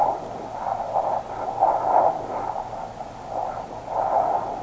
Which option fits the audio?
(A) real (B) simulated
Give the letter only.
A